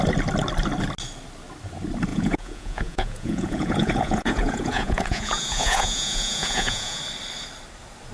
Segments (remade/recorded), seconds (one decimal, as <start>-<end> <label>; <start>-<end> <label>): 0.0-2.1 recorded; 2.1-7.0 remade; 7.0-8.1 recorded